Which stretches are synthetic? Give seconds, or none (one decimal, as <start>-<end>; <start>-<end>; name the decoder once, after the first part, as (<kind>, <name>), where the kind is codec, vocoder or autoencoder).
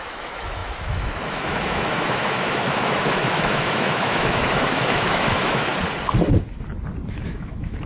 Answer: 0.0-5.7 (autoencoder, DAC-VAE); 7.1-7.9